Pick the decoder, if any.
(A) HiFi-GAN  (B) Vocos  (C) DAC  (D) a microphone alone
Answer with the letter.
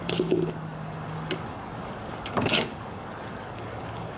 C